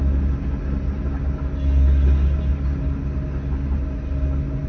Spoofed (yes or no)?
no